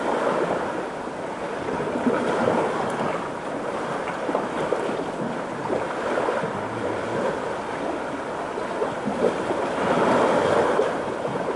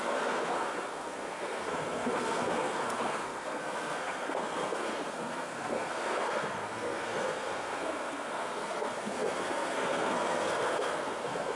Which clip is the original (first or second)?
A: first